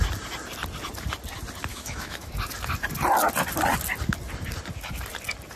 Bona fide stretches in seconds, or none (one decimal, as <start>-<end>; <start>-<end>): 0.0-1.7; 2.3-5.6